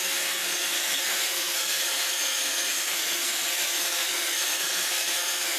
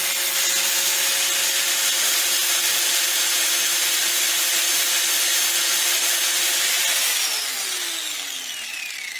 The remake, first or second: first